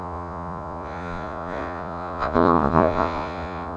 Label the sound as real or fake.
fake